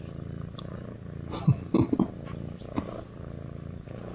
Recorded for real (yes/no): yes